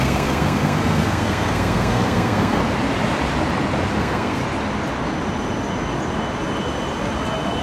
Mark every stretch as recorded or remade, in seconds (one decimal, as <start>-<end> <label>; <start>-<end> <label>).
0.0-2.6 remade; 2.6-4.0 recorded; 4.0-4.4 remade; 4.4-7.6 recorded